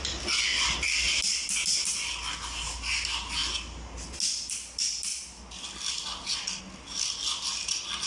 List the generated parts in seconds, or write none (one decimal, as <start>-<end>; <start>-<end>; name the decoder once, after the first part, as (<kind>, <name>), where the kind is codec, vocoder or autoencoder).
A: none